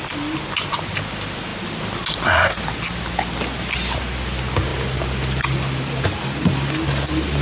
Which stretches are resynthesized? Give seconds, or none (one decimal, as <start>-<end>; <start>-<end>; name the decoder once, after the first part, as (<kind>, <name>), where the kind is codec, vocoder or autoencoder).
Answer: 4.7-6.0 (vocoder, BigVGAN v2)